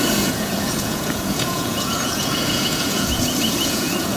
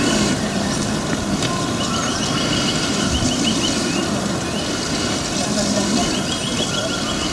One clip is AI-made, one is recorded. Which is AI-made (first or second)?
first